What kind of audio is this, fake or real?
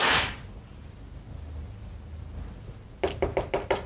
real